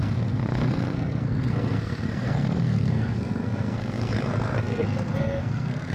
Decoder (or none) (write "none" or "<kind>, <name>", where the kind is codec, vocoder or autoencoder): codec, SNAC